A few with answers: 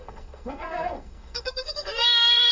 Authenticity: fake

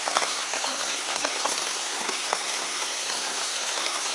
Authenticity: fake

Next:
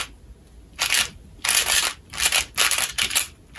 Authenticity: real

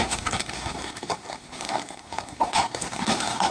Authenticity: fake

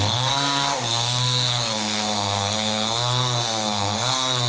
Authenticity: fake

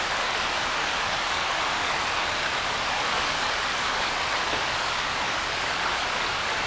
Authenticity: fake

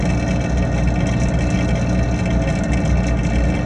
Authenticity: real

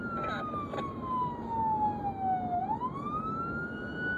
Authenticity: real